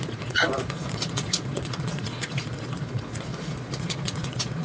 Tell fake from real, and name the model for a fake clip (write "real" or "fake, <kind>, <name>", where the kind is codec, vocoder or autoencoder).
fake, vocoder, Vocos